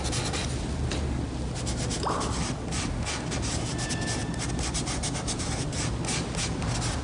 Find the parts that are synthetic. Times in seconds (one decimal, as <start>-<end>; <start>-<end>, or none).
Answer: 4.2-5.8